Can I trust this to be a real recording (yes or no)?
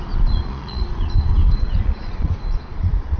no